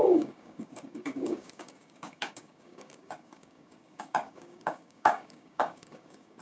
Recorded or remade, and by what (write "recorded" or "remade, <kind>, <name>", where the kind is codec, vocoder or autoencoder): remade, codec, DAC